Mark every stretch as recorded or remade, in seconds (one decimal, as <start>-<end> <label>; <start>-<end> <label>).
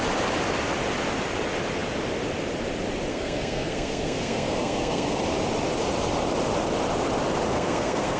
0.0-3.1 recorded; 3.1-5.2 remade; 5.2-7.5 recorded; 7.5-8.2 remade